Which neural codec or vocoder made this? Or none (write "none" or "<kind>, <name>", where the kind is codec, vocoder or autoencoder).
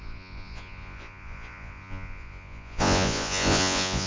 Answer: vocoder, Vocos